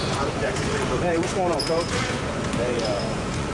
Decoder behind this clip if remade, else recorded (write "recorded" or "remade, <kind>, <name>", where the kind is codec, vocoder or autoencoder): remade, vocoder, Vocos